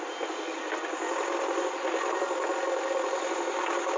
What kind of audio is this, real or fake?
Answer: real